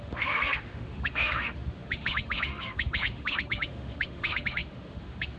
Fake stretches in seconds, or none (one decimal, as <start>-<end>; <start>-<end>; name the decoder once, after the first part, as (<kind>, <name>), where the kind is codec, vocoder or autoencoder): 0.0-5.4 (autoencoder, DAC-VAE)